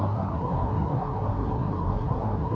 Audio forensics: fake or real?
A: fake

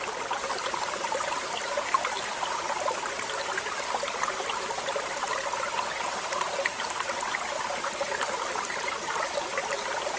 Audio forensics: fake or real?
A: real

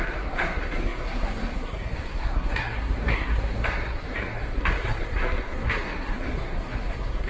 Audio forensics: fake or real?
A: fake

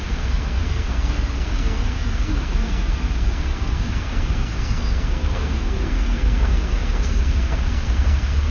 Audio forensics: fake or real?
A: fake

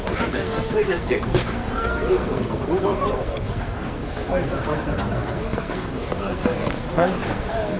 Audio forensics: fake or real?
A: fake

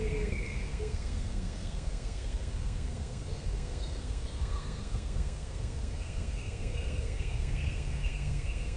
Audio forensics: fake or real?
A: fake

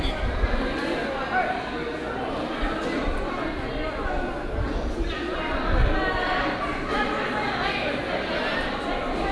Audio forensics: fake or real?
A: real